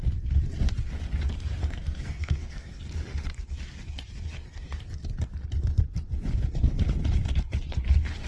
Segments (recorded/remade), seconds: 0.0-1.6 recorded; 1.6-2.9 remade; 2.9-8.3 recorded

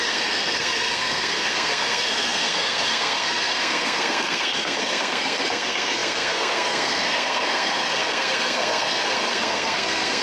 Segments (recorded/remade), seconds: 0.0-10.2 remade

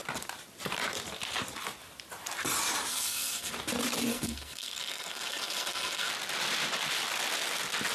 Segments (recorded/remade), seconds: 0.0-2.9 recorded; 2.9-3.5 remade; 3.5-4.1 recorded; 4.1-6.1 remade; 6.1-7.9 recorded

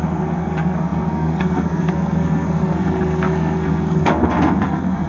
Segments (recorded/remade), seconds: 0.0-5.1 remade